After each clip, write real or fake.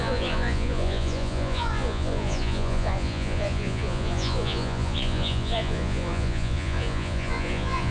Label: fake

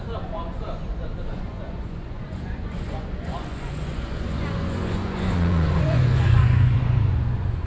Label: fake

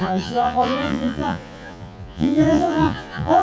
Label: fake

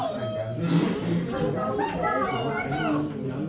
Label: real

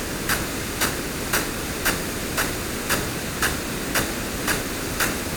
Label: real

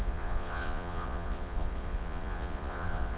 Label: fake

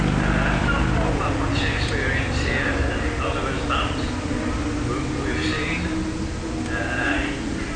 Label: real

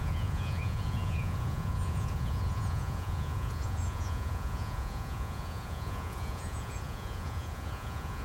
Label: fake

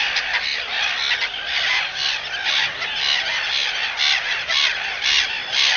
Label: real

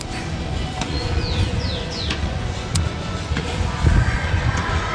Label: fake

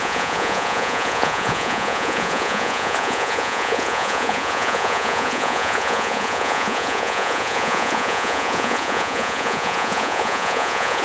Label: fake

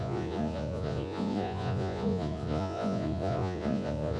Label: fake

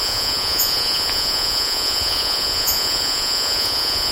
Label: fake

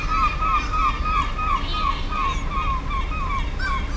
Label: real